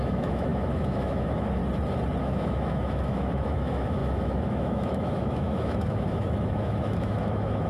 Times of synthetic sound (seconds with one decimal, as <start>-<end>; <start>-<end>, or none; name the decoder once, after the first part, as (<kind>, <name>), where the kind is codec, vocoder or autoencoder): 0.0-1.6 (autoencoder, DAC-VAE); 2.2-7.7